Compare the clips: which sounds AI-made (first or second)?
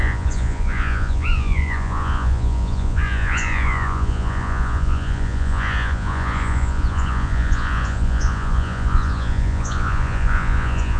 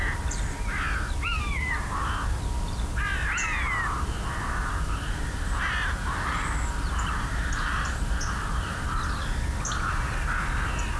first